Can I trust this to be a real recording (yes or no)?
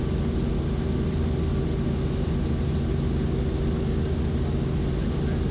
yes